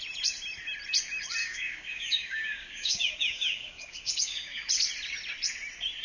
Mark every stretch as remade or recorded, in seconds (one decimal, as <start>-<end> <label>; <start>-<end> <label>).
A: 0.0-1.4 recorded; 1.4-4.7 remade; 4.7-6.0 recorded